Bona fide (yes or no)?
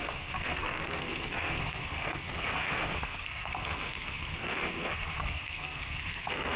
no